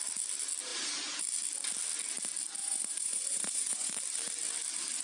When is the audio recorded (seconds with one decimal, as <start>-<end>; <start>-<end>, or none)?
0.0-2.6; 3.9-5.0